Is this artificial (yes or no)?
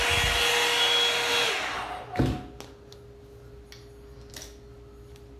no